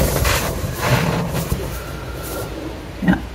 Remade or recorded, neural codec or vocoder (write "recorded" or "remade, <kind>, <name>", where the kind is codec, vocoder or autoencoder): remade, vocoder, BigVGAN v2